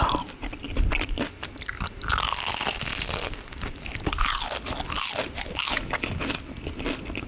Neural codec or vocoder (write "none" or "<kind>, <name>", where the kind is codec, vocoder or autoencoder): none